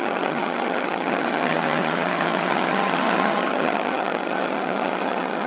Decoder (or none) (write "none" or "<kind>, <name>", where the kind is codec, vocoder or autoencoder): vocoder, HiFi-GAN